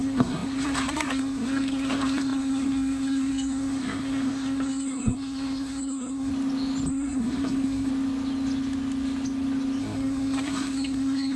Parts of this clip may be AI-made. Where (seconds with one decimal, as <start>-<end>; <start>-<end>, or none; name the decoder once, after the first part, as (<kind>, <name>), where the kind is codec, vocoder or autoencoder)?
0.0-6.3 (codec, SNAC); 6.9-7.9; 9.8-11.4